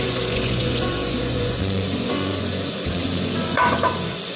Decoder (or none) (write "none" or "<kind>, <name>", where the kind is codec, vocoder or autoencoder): vocoder, Vocos